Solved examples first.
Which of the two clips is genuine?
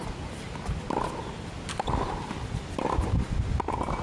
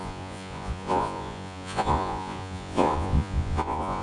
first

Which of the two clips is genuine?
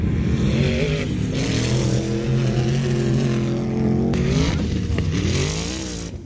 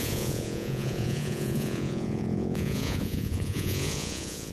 first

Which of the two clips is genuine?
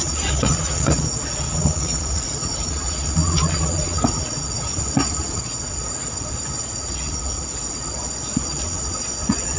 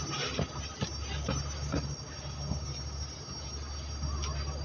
second